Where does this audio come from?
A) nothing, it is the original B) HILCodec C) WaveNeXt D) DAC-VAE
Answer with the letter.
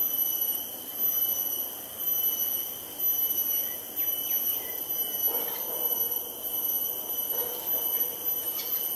A